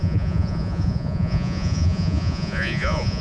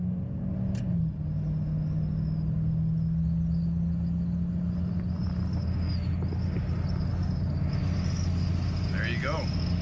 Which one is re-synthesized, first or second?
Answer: first